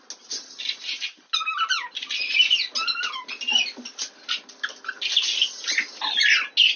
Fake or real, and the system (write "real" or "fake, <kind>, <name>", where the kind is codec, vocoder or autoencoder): real